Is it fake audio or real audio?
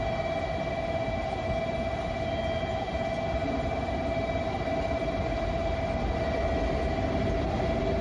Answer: real